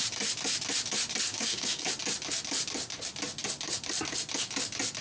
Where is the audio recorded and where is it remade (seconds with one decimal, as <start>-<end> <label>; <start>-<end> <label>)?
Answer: 0.0-1.3 recorded; 1.3-1.9 remade; 1.9-5.0 recorded